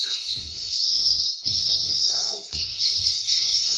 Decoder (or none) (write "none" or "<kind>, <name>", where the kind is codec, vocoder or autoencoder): codec, SNAC